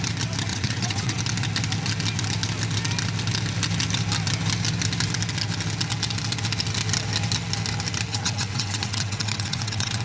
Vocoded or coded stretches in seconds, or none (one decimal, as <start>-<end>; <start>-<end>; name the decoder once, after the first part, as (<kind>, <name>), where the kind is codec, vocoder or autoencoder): 0.5-1.2 (vocoder, WaveNeXt); 8.1-10.0